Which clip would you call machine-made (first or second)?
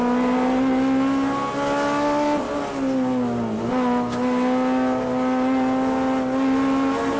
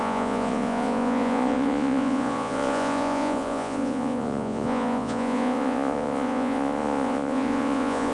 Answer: second